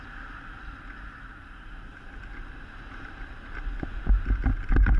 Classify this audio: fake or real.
real